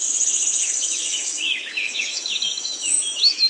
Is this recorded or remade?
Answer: remade